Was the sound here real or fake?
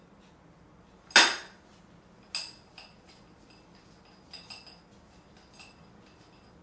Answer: real